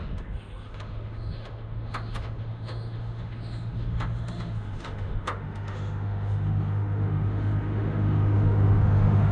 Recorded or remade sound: remade